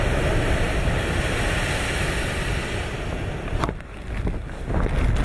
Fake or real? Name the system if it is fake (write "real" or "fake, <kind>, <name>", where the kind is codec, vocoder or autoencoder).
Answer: real